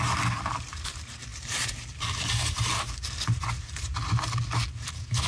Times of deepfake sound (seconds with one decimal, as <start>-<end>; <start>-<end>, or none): none